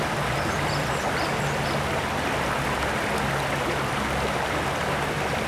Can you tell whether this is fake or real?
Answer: real